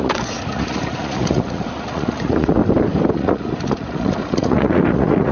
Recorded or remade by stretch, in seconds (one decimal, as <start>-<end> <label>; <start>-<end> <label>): 0.0-2.6 remade; 2.6-3.1 recorded; 3.1-5.3 remade